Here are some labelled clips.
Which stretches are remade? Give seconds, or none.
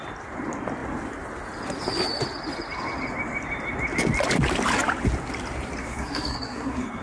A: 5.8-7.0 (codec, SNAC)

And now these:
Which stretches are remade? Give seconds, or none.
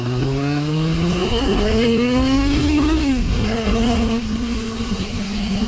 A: 0.0-5.7 (codec, SNAC)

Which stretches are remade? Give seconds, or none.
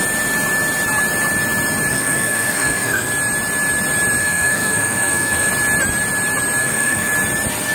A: 1.9-3.1 (codec, SNAC); 4.2-5.5; 6.6-7.1